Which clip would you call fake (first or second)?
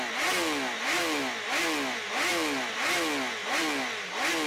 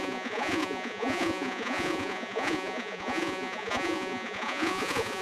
second